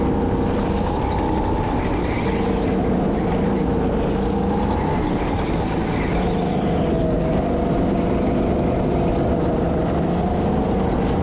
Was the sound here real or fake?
real